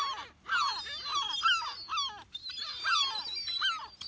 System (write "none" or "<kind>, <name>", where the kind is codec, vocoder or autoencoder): none